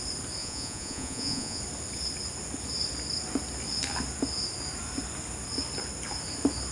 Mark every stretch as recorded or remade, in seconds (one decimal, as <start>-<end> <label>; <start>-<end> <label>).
0.0-0.4 recorded; 0.4-1.6 remade; 1.6-6.7 recorded